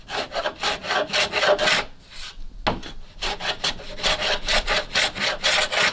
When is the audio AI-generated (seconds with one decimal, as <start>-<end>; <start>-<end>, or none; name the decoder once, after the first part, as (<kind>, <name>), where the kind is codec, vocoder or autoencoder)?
none